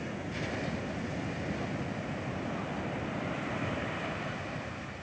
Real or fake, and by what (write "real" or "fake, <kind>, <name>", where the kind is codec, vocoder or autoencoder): real